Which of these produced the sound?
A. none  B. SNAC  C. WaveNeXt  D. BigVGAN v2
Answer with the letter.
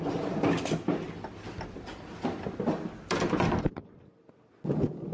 A